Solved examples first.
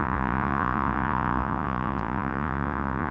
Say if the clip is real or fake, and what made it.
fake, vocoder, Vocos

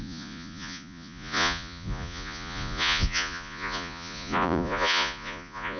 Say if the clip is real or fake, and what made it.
fake, vocoder, Vocos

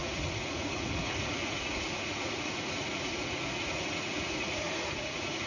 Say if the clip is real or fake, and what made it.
fake, vocoder, Vocos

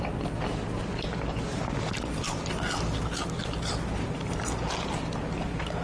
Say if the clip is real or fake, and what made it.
real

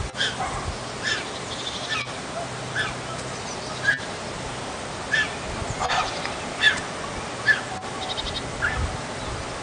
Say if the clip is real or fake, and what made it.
real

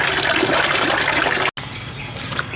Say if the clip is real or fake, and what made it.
real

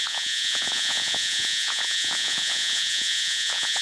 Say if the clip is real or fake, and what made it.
fake, vocoder, Vocos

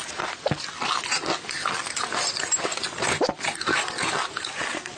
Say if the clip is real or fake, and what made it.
real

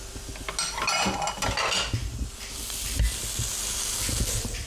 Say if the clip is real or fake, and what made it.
real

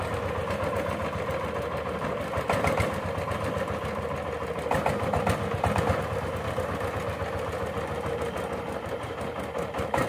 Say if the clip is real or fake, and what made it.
real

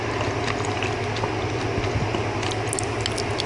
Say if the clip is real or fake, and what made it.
real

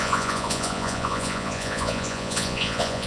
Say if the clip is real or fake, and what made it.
fake, vocoder, Vocos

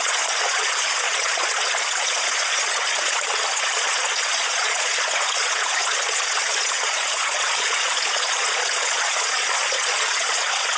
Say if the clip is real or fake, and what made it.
fake, vocoder, Vocos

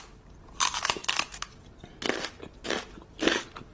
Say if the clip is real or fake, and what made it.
real